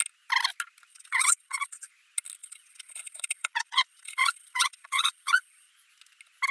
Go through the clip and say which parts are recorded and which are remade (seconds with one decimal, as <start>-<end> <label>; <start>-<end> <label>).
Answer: 0.0-0.9 recorded; 0.9-1.9 remade; 1.9-2.4 recorded; 2.4-5.7 remade; 5.7-6.5 recorded